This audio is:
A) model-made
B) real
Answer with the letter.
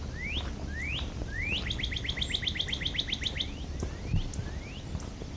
B